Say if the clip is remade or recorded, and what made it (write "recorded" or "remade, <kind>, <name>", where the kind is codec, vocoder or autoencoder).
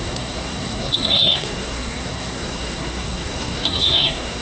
remade, codec, SNAC